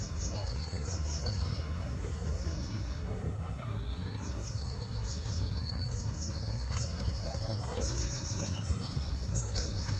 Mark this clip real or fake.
fake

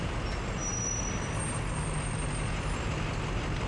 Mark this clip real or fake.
real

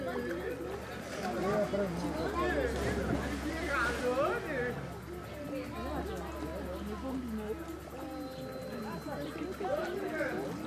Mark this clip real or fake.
real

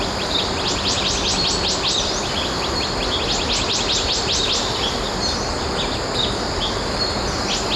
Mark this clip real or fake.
real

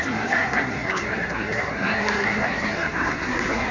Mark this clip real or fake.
fake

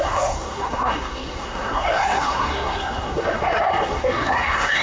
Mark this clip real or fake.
fake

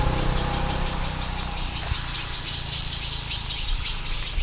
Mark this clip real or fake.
real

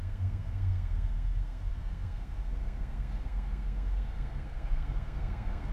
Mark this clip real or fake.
fake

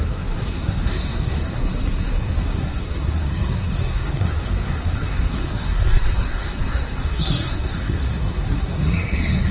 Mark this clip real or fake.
fake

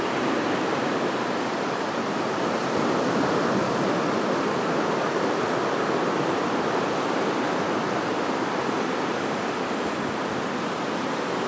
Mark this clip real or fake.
real